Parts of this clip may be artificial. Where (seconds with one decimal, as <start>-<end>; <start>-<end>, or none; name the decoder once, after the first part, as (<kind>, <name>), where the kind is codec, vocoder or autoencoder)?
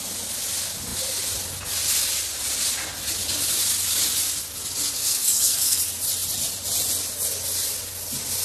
5.0-5.8 (codec, SNAC)